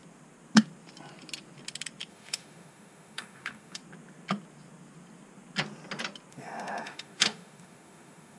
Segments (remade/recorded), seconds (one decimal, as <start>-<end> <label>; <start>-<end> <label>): 0.0-2.1 recorded; 2.1-3.8 remade; 3.8-6.3 recorded; 6.3-8.4 remade

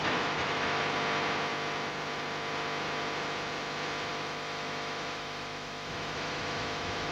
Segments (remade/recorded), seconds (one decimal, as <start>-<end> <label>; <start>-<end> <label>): 0.0-0.8 remade; 0.8-4.1 recorded; 4.1-7.1 remade